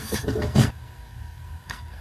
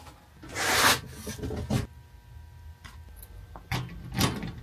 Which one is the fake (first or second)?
first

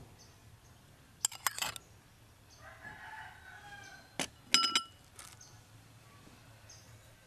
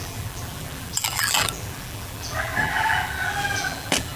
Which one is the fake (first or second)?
second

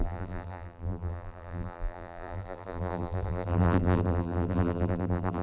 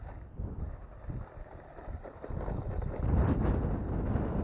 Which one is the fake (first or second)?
first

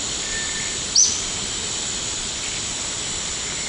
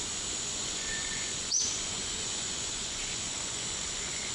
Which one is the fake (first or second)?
second